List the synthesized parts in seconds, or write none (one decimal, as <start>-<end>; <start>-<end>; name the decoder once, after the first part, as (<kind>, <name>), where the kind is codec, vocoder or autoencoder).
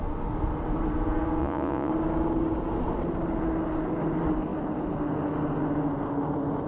1.4-1.9 (vocoder, Vocos)